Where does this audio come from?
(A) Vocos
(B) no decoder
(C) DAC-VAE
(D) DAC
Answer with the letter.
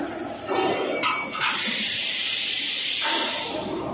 B